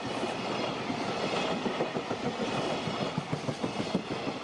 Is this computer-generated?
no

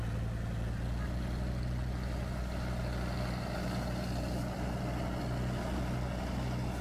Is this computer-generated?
no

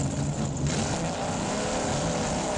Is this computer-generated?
no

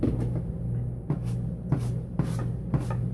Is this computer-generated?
yes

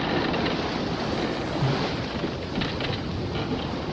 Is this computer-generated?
no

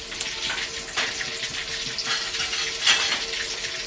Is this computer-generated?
no